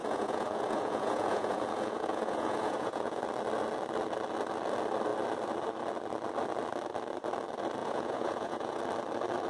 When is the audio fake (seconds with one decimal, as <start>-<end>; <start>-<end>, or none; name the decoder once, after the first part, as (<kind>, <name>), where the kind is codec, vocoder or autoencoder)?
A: 0.0-3.2 (vocoder, Vocos); 7.8-8.8

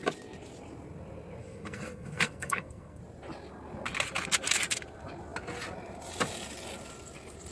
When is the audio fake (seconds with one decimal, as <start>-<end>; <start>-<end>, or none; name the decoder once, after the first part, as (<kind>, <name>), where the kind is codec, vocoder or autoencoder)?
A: 1.4-3.0 (codec, SNAC)

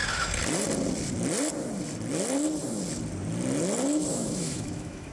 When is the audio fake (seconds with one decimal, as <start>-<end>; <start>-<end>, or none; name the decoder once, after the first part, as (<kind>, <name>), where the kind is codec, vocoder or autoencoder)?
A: 4.1-5.1 (autoencoder, DAC-VAE)

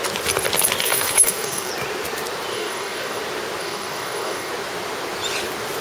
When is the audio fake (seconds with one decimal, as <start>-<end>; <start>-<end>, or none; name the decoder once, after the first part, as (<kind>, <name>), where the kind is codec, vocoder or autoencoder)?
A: 0.8-1.7 (codec, DAC); 2.5-3.2; 3.6-4.5

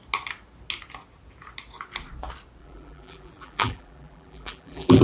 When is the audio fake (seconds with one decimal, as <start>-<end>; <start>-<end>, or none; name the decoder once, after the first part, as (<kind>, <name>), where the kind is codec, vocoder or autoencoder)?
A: 2.6-5.0 (vocoder, BigVGAN v2)

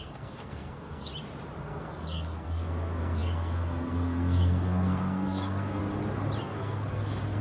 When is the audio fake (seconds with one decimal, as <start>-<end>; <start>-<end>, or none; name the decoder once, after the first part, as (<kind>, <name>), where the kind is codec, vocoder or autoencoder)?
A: 0.0-1.1 (codec, SNAC); 1.6-5.8; 6.4-7.4

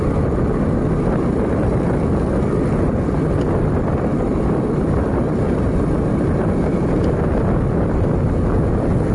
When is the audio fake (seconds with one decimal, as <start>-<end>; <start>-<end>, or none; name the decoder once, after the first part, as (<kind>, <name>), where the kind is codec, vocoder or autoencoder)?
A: none

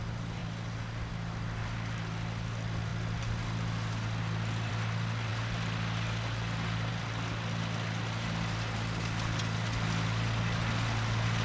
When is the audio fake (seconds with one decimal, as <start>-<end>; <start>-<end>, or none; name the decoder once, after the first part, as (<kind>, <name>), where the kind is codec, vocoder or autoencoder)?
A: none